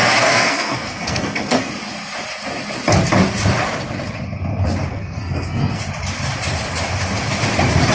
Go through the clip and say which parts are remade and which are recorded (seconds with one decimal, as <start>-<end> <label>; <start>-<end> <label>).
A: 0.0-1.7 remade; 1.7-4.9 recorded; 4.9-5.8 remade; 5.8-7.9 recorded